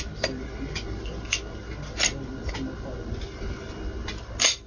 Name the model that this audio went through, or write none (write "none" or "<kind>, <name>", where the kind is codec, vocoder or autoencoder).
none